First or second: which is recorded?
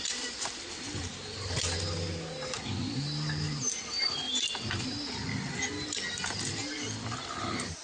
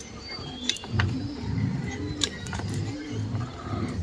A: first